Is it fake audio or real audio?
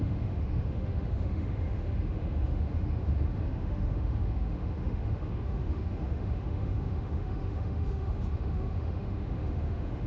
fake